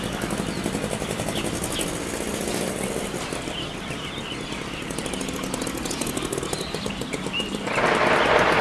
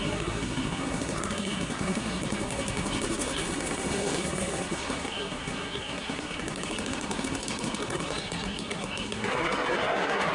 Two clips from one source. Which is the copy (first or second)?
second